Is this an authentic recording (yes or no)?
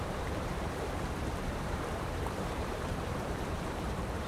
no